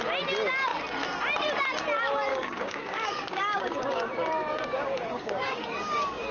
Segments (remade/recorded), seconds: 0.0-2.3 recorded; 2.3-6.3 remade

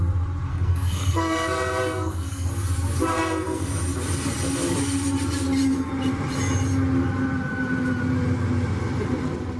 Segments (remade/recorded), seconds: 0.0-0.5 recorded; 0.5-2.5 remade; 2.5-3.1 recorded; 3.1-3.7 remade; 3.7-9.6 recorded

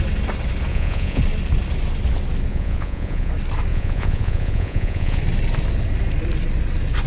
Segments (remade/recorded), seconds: 0.0-0.7 recorded; 0.7-1.2 remade; 1.2-2.5 recorded; 2.5-3.3 remade; 3.3-3.7 recorded; 3.7-5.2 remade; 5.2-7.1 recorded

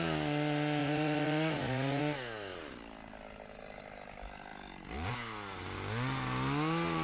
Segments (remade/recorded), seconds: 0.0-0.8 recorded; 0.8-2.0 remade; 2.0-7.0 recorded

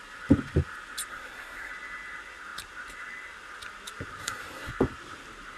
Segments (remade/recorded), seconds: 0.0-1.1 recorded; 1.1-1.7 remade; 1.7-4.2 recorded; 4.2-4.7 remade; 4.7-5.6 recorded

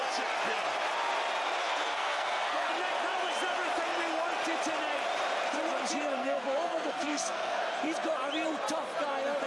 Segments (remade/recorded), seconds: 0.0-1.6 recorded; 1.6-2.7 remade; 2.7-6.2 recorded; 6.2-7.6 remade; 7.6-9.5 recorded

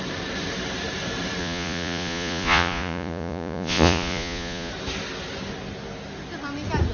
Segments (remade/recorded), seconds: 0.0-1.4 recorded; 1.4-4.7 remade; 4.7-6.9 recorded

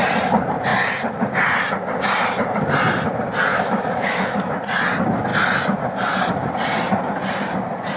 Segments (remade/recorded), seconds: 0.0-3.5 recorded; 3.5-4.5 remade; 4.5-8.0 recorded